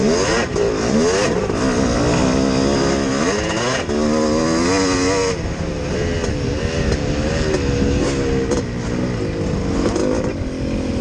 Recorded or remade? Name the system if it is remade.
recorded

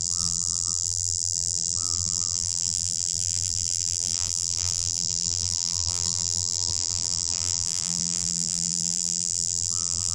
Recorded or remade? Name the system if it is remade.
remade, vocoder, BigVGAN v2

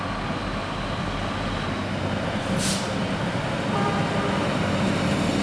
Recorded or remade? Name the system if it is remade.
recorded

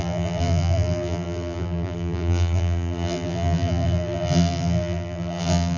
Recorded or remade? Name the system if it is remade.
remade, vocoder, BigVGAN v2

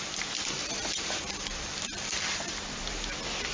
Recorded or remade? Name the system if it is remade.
remade, vocoder, BigVGAN v2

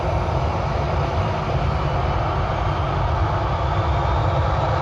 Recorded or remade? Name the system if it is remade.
recorded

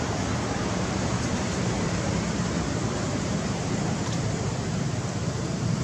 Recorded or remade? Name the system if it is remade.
remade, vocoder, BigVGAN v2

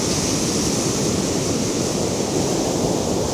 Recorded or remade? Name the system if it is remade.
recorded